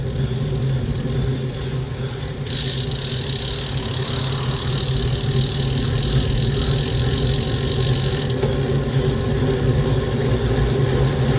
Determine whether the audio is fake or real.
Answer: real